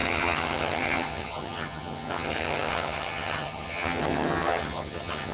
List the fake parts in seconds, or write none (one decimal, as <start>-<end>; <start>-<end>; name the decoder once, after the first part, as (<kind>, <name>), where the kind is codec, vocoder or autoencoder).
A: 0.0-5.3 (vocoder, HiFi-GAN)

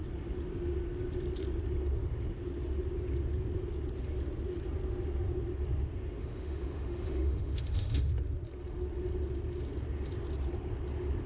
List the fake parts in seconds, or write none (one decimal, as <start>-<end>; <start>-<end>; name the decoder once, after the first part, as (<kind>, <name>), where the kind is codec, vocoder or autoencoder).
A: 6.2-8.1 (autoencoder, DAC-VAE)

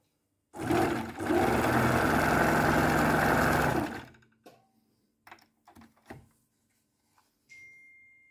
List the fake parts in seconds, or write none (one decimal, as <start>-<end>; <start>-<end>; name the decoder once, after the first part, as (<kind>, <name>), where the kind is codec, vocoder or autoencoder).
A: none

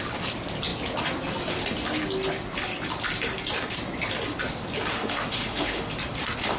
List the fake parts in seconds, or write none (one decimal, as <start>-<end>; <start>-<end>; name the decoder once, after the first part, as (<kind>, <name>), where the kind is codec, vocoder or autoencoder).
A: 4.9-5.9 (autoencoder, DAC-VAE)

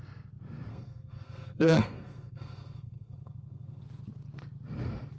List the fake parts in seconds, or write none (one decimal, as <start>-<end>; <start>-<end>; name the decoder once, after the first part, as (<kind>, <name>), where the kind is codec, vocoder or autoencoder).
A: 0.7-3.8 (codec, SNAC)

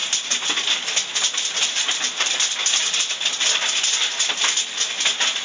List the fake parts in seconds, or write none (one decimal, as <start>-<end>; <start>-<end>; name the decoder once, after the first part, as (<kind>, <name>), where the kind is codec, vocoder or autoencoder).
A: none

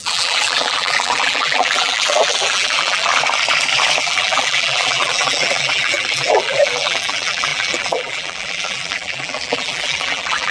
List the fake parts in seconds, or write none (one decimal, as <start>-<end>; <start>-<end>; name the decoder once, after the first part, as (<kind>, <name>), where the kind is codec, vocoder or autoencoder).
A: 0.0-3.1 (vocoder, BigVGAN v2); 4.0-10.5